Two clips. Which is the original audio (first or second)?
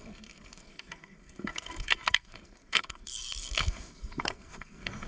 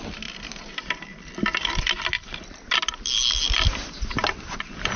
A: second